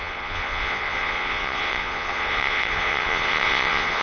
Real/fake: fake